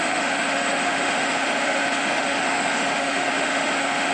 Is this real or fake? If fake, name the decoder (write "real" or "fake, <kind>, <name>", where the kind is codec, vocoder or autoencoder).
fake, autoencoder, DAC-VAE